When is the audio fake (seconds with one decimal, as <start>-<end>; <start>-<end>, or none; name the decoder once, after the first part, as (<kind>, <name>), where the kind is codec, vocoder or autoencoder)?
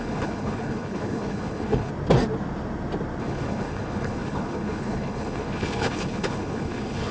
0.0-1.9 (codec, HILCodec); 3.2-7.1